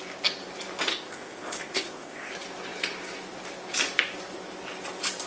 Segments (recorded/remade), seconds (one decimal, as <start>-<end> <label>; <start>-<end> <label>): 0.0-0.9 recorded; 0.9-2.3 remade; 2.3-5.3 recorded